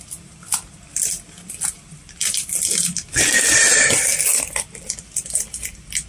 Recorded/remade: recorded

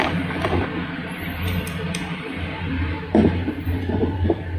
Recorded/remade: remade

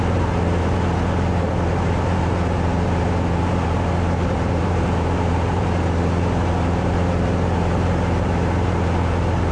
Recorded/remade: remade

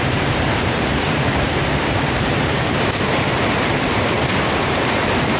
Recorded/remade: remade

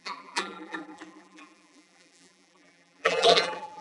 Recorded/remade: remade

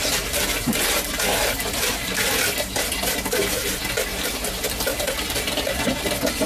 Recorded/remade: recorded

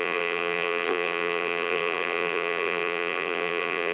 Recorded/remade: remade